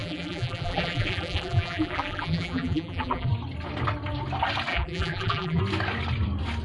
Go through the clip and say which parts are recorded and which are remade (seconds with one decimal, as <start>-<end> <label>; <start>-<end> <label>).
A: 0.0-3.3 remade; 3.3-4.7 recorded; 4.7-5.6 remade; 5.6-6.6 recorded